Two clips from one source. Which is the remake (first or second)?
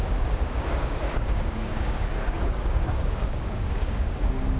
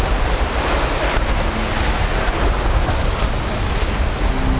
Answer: first